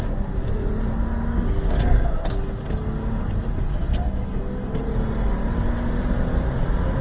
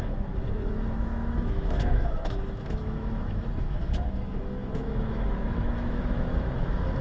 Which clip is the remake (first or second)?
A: second